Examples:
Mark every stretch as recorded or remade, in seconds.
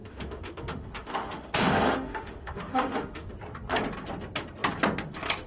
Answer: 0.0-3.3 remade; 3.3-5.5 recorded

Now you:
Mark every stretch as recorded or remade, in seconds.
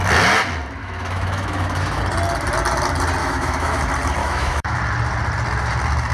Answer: 0.0-0.8 recorded; 0.8-2.0 remade; 2.0-3.2 recorded; 3.2-3.8 remade; 3.8-4.2 recorded; 4.2-4.8 remade; 4.8-6.1 recorded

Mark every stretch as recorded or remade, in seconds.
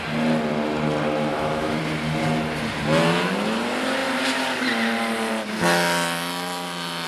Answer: 0.0-1.3 recorded; 1.3-1.8 remade; 1.8-7.1 recorded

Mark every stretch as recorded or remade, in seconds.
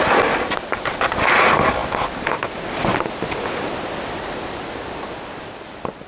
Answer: 0.0-6.1 recorded